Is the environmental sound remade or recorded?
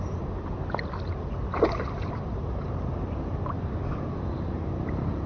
recorded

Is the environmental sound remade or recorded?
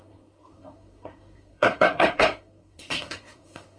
remade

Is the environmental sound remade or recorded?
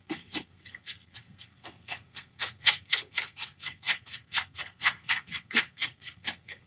remade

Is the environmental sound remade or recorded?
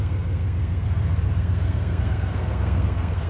remade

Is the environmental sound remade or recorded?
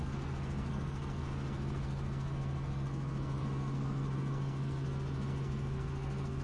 remade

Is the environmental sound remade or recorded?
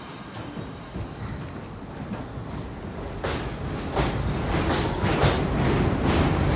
recorded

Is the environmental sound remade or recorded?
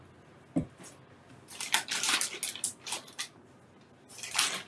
recorded